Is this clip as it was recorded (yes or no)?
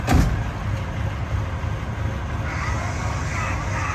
yes